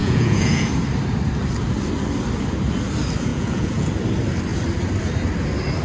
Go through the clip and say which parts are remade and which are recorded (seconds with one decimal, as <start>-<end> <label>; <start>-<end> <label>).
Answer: 0.0-0.7 remade; 0.7-3.3 recorded; 3.3-3.9 remade; 3.9-5.8 recorded